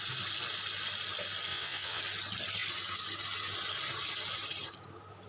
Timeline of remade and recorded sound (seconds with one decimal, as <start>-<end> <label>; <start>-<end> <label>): 0.0-1.5 recorded; 1.5-2.0 remade; 2.0-5.3 recorded